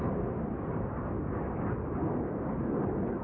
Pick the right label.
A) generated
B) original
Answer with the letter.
B